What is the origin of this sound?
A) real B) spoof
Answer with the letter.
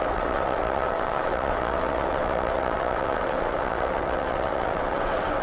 B